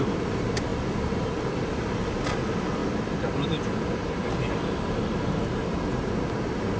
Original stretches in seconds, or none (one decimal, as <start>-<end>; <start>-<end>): 0.0-6.8